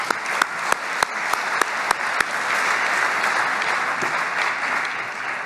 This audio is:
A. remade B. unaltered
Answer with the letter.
B